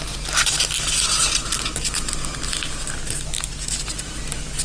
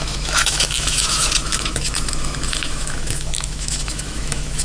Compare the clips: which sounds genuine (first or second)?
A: first